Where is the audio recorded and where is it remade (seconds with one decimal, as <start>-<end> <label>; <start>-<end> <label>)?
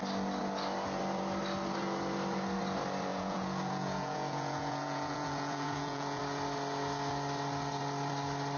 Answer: 0.0-3.1 recorded; 3.1-6.2 remade; 6.2-8.6 recorded